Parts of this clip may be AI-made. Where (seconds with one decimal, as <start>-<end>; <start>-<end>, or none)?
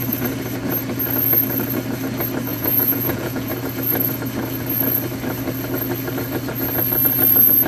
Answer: 2.5-3.5